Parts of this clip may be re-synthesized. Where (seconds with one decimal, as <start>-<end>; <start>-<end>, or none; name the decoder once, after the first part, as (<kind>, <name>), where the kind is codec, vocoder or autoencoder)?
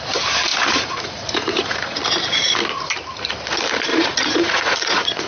0.5-2.0 (vocoder, Vocos); 3.9-5.3